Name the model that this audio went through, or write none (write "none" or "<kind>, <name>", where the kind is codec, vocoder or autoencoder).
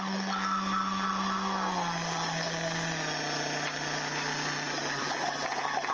none